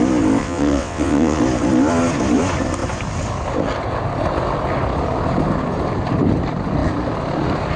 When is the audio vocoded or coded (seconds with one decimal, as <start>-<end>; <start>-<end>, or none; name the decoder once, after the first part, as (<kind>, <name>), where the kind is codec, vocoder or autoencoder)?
0.4-1.4 (vocoder, WaveNeXt)